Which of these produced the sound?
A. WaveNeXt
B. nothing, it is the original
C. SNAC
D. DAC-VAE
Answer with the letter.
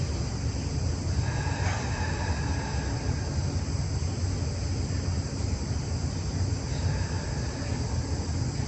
B